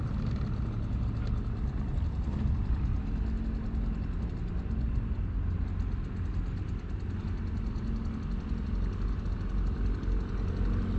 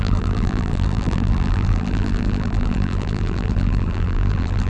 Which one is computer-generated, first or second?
second